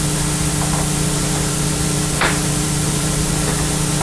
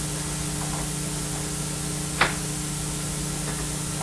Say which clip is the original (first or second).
second